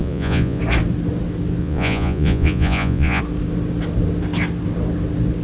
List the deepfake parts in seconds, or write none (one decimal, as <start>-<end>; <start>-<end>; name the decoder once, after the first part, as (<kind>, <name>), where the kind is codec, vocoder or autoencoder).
0.0-0.6 (vocoder, Vocos); 1.6-3.2